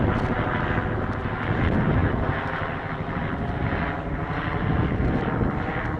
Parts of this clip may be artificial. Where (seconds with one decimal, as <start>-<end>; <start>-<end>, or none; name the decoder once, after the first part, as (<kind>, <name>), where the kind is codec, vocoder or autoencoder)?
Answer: none